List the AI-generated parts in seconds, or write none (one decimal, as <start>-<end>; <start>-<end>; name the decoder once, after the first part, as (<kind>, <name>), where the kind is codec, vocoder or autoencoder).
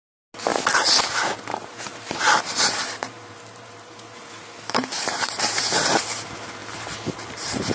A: 1.5-6.0 (vocoder, BigVGAN v2)